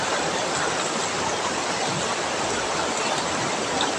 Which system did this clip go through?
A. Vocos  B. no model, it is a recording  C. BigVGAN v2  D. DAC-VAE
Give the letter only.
B